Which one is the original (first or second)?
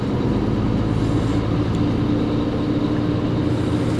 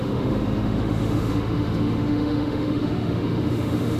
first